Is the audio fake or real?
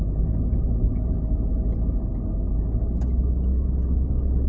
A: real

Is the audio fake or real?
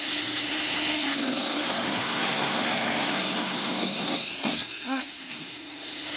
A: fake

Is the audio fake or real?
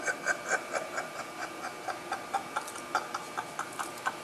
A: real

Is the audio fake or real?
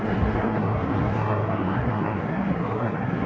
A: fake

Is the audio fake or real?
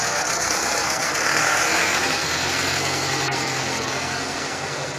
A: fake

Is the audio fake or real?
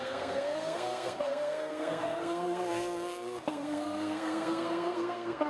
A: fake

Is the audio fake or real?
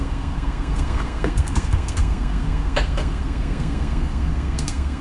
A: fake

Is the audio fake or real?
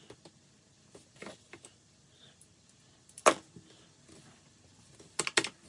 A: real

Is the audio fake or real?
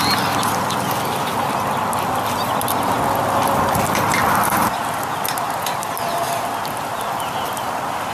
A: real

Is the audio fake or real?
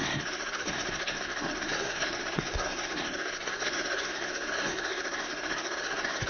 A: fake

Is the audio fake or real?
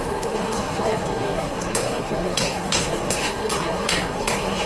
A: fake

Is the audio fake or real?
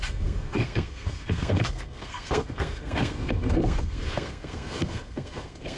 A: fake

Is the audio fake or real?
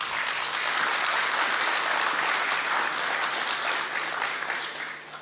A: real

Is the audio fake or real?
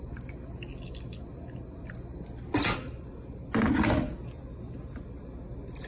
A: real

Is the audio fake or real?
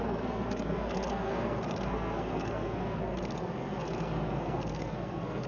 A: fake